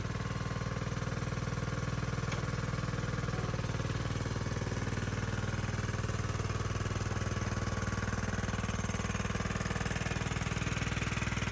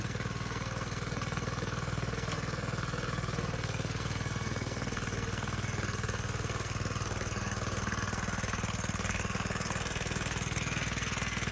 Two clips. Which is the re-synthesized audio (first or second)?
second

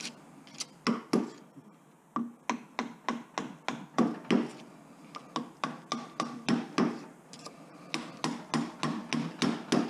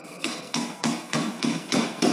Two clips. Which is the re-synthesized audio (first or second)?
second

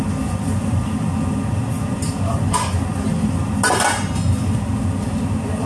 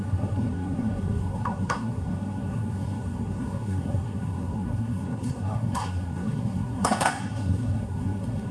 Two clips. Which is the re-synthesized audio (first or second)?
second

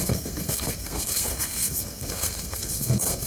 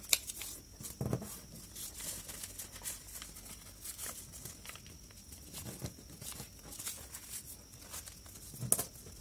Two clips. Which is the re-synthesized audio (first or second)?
first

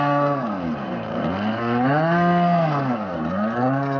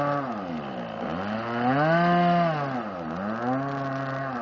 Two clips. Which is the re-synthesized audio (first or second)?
first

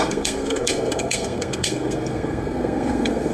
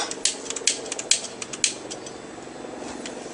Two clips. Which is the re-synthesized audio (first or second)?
first